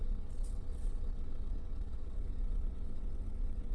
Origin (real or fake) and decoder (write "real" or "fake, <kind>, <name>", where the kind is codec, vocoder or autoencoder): fake, vocoder, WaveNeXt